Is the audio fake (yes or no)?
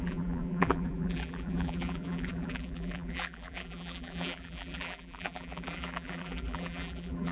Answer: yes